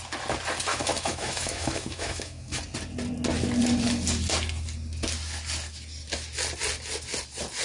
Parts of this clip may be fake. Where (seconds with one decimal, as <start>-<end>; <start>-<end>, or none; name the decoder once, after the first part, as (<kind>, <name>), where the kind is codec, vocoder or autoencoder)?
0.7-2.6 (autoencoder, DAC-VAE)